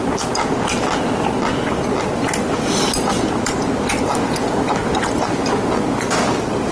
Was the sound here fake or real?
real